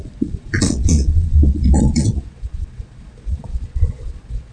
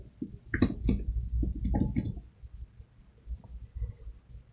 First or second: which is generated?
first